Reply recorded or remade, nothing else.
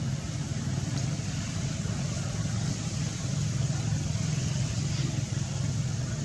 recorded